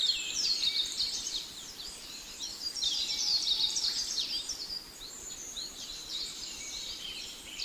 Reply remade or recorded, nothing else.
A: remade